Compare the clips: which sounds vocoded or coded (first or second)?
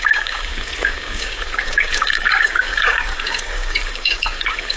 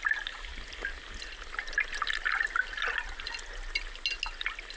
first